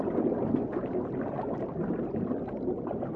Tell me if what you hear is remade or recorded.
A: recorded